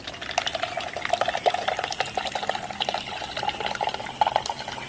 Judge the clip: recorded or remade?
recorded